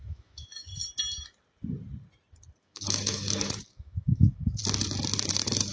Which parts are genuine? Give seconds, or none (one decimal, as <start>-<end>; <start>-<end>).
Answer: 0.7-2.6; 4.6-5.3